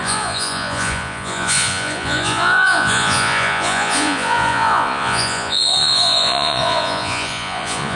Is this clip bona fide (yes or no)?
no